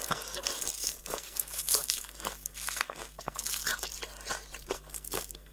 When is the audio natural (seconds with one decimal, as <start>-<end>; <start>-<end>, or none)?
3.9-4.6